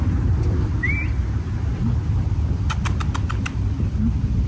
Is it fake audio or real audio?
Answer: real